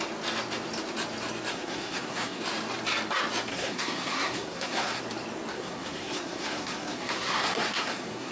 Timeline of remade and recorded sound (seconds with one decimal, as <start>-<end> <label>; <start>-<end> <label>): 0.0-1.5 recorded; 1.5-2.4 remade; 2.4-3.5 recorded; 3.5-5.0 remade; 5.0-5.5 recorded; 5.5-8.3 remade